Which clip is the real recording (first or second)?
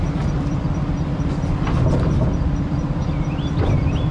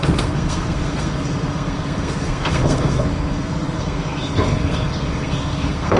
first